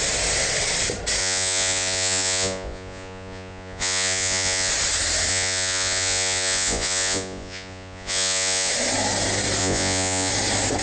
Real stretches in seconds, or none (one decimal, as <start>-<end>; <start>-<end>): 0.0-1.2; 4.7-5.3; 8.7-9.6; 10.3-10.8